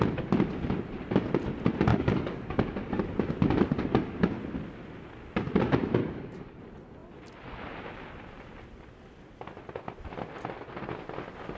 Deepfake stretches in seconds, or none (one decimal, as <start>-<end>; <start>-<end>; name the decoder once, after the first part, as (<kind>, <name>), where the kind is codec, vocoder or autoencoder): 1.9-3.0 (codec, DAC); 6.0-6.6